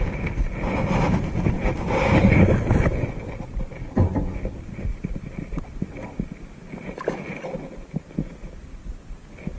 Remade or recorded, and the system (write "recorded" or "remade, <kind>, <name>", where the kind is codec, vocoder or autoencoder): recorded